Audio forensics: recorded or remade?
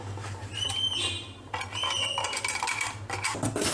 recorded